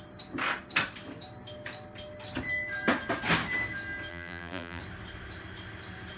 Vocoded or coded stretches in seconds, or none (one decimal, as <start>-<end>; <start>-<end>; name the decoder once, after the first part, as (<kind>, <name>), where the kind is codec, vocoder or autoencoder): 4.1-4.8 (vocoder, BigVGAN v2)